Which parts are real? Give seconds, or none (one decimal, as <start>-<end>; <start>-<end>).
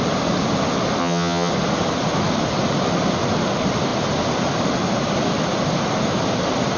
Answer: 0.0-1.0; 1.5-6.8